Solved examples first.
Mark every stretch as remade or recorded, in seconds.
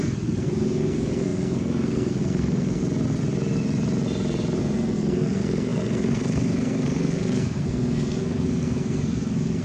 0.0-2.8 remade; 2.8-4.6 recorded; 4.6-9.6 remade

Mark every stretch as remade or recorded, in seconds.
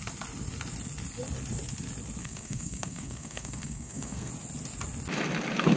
0.0-2.2 recorded; 2.2-4.3 remade; 4.3-5.8 recorded